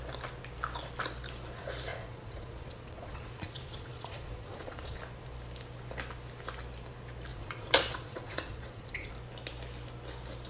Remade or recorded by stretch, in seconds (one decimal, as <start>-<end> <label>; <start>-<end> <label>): 0.0-1.9 recorded; 1.9-5.0 remade; 5.0-7.3 recorded; 7.3-9.1 remade; 9.1-10.5 recorded